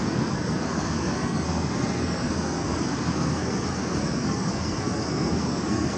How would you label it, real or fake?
fake